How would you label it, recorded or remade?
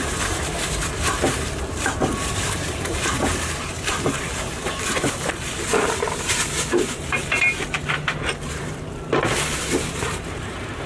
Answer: remade